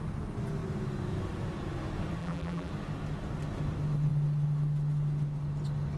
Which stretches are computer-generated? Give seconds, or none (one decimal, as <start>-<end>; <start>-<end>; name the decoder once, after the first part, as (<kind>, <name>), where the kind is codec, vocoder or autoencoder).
2.2-2.7 (vocoder, BigVGAN v2)